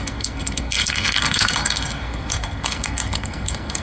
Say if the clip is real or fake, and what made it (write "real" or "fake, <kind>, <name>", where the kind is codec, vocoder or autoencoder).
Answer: fake, codec, SNAC